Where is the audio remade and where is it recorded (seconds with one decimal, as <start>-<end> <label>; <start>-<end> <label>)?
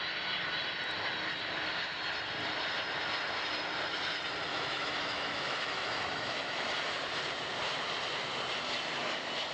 0.0-4.5 recorded; 4.5-6.7 remade; 6.7-9.5 recorded